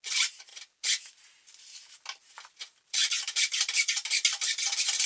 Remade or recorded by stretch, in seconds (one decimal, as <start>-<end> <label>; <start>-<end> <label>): 0.0-5.1 recorded